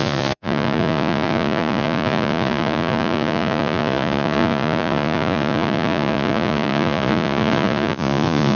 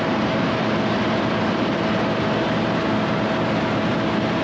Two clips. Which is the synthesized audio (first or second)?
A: first